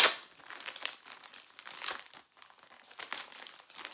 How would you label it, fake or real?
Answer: real